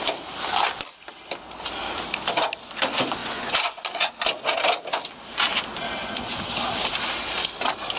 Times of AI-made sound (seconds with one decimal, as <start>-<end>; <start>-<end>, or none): 3.2-4.1; 6.0-6.5